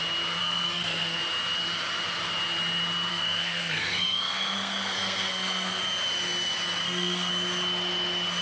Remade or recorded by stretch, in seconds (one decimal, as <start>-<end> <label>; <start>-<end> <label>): 0.0-0.4 recorded; 0.4-1.2 remade; 1.2-3.1 recorded; 3.1-5.8 remade; 5.8-6.8 recorded; 6.8-7.3 remade; 7.3-8.4 recorded